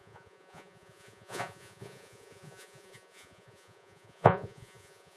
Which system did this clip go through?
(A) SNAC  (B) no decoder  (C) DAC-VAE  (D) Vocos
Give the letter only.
D